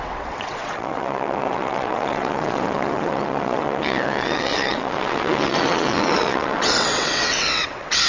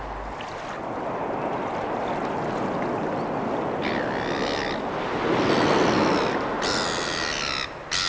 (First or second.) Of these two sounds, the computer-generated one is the first